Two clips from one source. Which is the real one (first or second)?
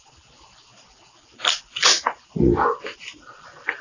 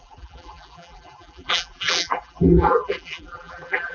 first